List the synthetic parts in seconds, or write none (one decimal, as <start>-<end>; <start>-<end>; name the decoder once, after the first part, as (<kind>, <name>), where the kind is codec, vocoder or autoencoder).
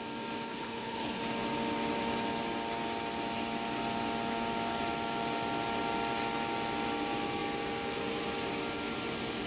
0.5-1.2 (codec, HILCodec)